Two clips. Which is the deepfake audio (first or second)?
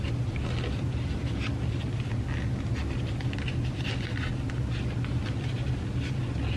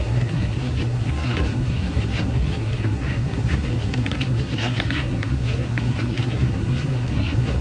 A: second